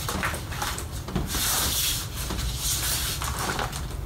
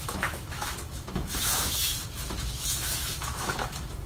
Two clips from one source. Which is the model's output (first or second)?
second